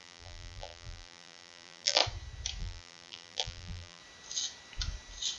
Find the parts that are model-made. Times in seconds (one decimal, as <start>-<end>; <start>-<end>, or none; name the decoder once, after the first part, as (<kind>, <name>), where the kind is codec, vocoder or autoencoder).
0.0-2.0 (vocoder, BigVGAN v2); 2.6-4.0